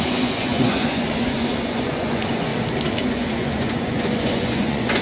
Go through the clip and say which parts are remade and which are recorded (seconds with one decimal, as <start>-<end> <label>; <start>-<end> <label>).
0.0-2.5 remade; 2.5-3.0 recorded; 3.0-5.0 remade